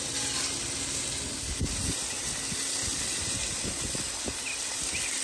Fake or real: real